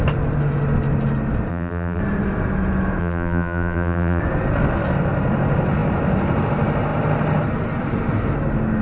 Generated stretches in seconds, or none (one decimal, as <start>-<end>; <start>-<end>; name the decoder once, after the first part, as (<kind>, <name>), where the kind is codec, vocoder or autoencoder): 1.5-2.0 (vocoder, BigVGAN v2); 3.0-4.2